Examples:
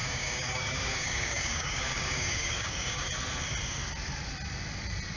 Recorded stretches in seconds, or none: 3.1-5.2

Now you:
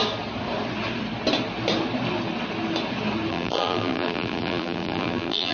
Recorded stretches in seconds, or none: 0.0-3.3

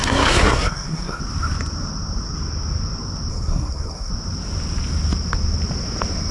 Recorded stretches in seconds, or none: 1.2-3.3; 4.1-6.3

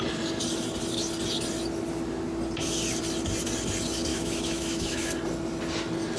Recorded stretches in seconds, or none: 0.0-4.1; 5.1-6.2

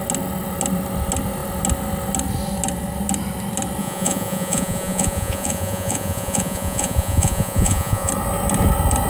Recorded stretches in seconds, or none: 0.0-3.8; 8.1-9.1